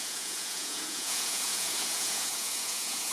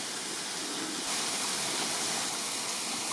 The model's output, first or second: first